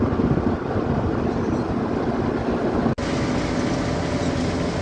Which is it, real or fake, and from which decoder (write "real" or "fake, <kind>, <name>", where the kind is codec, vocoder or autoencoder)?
real